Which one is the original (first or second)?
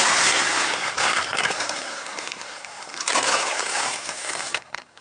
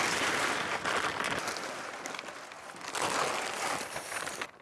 second